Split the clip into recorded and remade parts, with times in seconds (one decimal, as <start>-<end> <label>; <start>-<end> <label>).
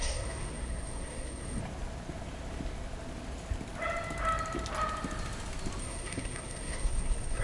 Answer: 0.0-1.6 remade; 1.6-5.8 recorded; 5.8-7.4 remade